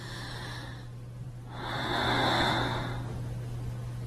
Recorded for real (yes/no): yes